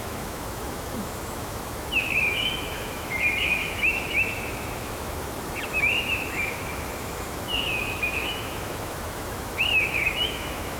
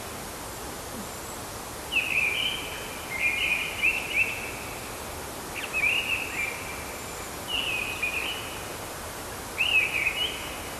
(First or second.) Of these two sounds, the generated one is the first